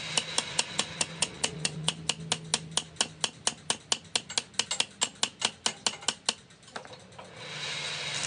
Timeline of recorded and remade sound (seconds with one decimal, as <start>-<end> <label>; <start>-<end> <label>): 0.0-0.5 recorded; 0.5-1.9 remade; 1.9-8.3 recorded